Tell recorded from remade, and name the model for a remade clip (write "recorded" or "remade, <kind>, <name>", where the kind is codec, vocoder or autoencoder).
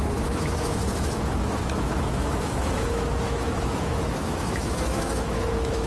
remade, autoencoder, DAC-VAE